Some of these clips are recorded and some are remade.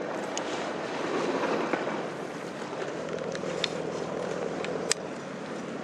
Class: recorded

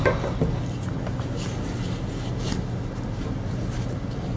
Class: recorded